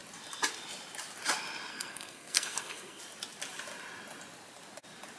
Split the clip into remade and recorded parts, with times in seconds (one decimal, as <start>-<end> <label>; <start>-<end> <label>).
0.0-1.7 recorded; 1.7-3.0 remade; 3.0-5.2 recorded